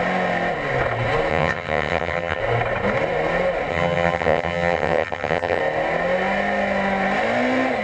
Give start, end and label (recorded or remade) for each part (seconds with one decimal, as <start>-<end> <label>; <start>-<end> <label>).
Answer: 0.0-1.3 recorded; 1.3-2.4 remade; 2.4-3.7 recorded; 3.7-5.6 remade; 5.6-7.8 recorded